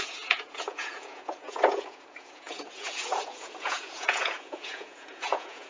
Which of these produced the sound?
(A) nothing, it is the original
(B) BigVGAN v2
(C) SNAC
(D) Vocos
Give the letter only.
D